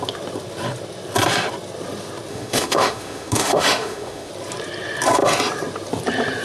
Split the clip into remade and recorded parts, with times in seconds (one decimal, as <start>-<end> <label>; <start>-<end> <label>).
0.0-2.3 recorded; 2.3-4.3 remade; 4.3-6.4 recorded